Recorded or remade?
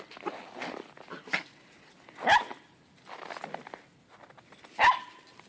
recorded